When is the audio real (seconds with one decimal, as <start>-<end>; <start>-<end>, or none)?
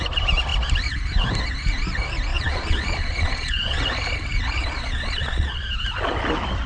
0.0-2.3; 3.8-4.6; 5.6-6.7